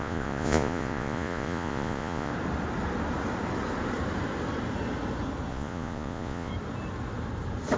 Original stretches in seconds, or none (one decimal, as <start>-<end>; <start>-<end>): 2.3-5.5; 6.5-7.8